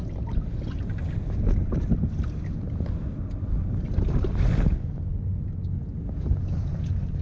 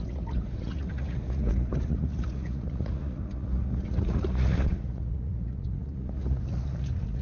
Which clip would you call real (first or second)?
first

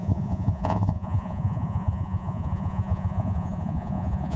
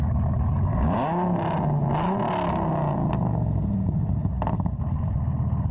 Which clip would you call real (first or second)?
second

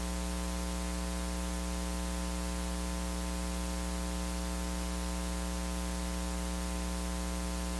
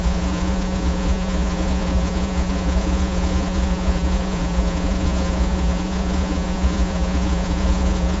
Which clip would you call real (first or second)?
first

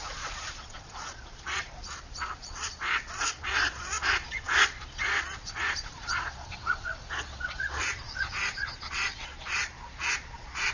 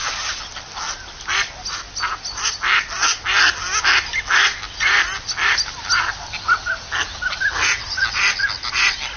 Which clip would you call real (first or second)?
second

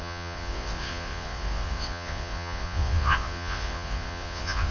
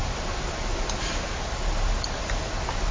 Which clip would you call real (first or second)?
second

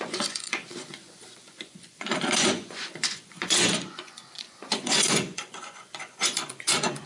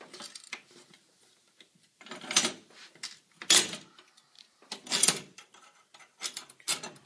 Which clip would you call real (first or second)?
second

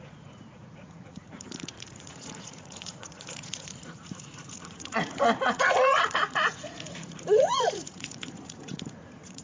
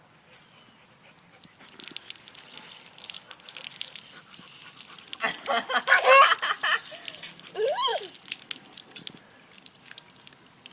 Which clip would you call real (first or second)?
second